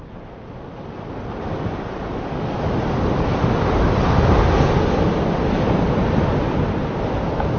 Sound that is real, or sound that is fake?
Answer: real